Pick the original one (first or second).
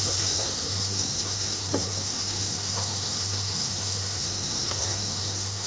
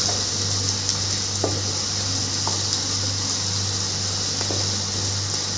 second